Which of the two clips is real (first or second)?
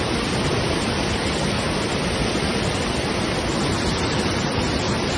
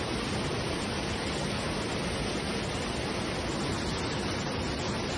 second